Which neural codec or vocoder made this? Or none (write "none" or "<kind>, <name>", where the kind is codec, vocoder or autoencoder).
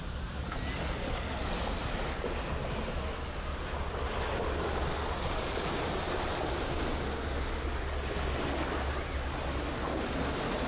none